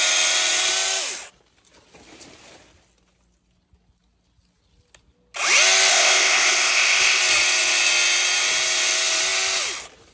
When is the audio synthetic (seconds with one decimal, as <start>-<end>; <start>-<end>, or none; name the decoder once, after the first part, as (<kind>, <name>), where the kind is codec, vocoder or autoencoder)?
5.9-7.2 (codec, ZipCodec)